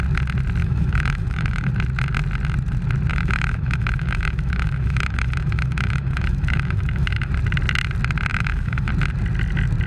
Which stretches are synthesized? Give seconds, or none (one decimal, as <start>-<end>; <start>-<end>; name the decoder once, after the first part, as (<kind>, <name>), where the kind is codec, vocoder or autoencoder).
0.6-1.7 (autoencoder, DAC-VAE); 3.1-7.3; 8.3-8.9